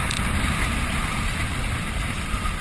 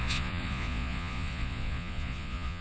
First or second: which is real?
first